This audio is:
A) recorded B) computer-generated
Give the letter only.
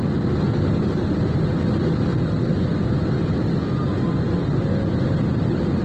A